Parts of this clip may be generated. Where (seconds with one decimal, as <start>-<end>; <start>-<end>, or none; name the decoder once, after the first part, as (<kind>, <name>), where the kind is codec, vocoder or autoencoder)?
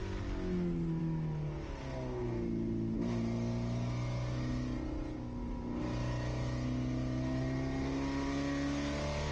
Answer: none